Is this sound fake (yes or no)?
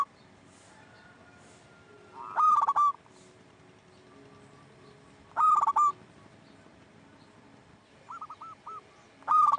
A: no